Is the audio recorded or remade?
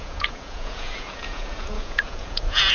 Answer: remade